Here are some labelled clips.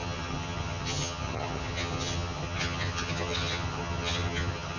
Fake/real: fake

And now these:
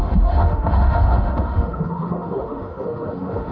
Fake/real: fake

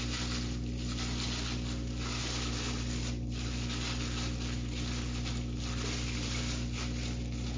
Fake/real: real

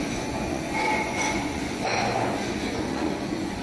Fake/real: fake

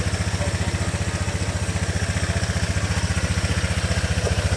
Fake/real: real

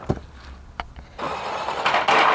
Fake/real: real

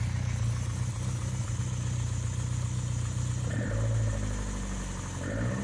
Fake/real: real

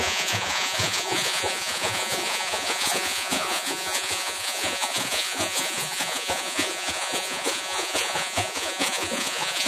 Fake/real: fake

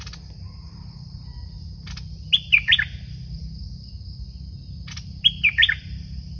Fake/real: real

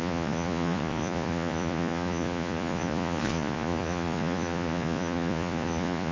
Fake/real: fake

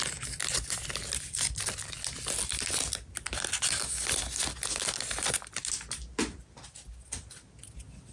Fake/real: real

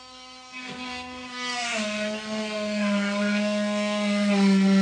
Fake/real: fake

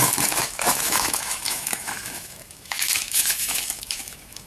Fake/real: fake